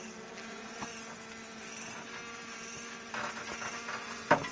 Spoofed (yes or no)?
no